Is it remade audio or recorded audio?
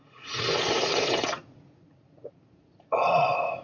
remade